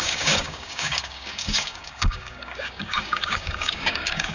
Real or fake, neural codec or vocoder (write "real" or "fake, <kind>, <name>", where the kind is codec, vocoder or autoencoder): fake, codec, DAC